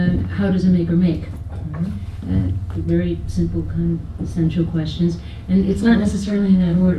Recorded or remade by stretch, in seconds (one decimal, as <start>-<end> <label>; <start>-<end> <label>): 0.0-5.6 recorded; 5.6-7.0 remade